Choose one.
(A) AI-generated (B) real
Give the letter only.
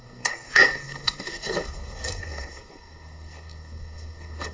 A